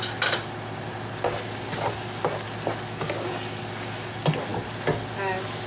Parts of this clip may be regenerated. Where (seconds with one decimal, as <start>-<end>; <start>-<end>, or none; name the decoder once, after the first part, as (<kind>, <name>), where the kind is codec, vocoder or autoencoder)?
none